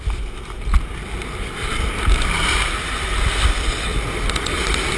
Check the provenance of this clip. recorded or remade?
remade